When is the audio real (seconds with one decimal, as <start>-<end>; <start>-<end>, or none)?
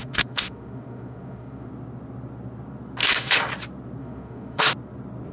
1.7-3.0; 3.5-4.0; 4.7-5.3